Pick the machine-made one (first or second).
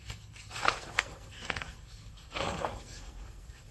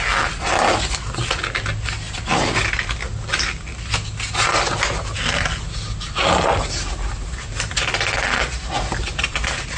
first